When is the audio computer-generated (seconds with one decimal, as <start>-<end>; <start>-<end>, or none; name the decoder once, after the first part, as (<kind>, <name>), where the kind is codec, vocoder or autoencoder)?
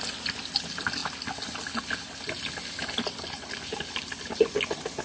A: none